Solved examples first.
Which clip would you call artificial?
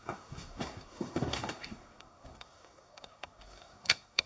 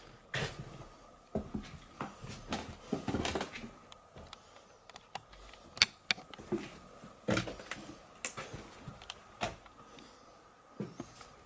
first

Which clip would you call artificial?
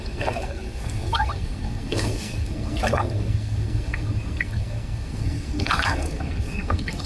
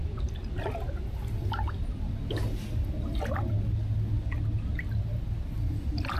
first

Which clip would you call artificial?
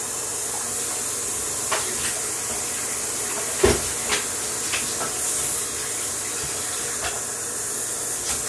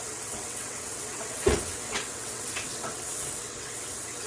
second